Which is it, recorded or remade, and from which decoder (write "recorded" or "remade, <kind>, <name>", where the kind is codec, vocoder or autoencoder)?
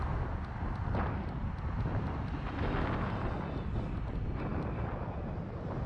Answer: recorded